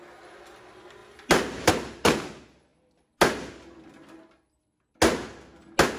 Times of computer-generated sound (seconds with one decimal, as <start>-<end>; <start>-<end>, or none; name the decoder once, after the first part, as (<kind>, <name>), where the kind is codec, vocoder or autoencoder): none